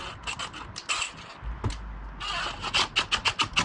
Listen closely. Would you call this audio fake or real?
real